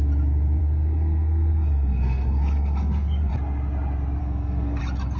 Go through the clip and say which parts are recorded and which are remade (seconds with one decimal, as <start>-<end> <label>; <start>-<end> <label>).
0.0-0.6 recorded; 0.6-3.3 remade; 3.3-4.2 recorded; 4.2-4.8 remade; 4.8-5.2 recorded

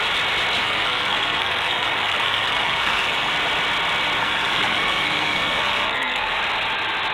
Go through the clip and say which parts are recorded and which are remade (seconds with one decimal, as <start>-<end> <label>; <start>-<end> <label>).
0.0-0.6 recorded; 0.6-3.3 remade; 3.3-4.2 recorded; 4.2-6.4 remade; 6.4-7.1 recorded